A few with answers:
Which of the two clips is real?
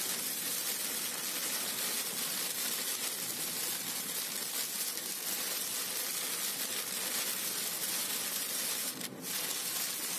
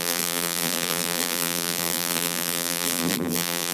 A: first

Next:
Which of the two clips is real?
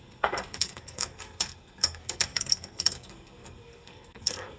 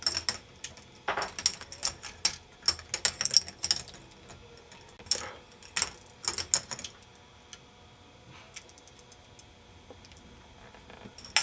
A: second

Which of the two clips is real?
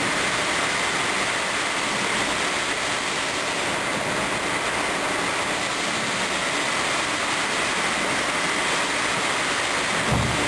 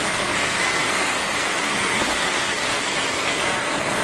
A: first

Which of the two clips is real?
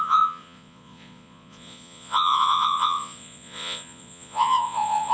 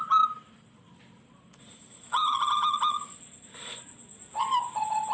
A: second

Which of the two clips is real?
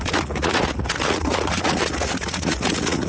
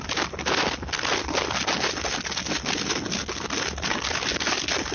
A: second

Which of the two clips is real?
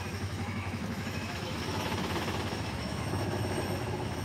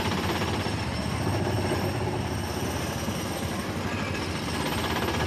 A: second